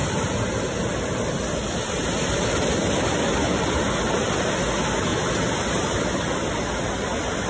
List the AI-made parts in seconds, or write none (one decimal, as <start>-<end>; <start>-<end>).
0.0-4.5; 5.1-6.1